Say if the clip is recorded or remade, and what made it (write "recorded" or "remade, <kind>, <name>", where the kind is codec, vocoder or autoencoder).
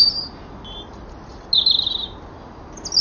recorded